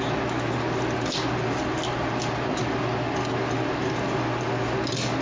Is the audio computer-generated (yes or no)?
no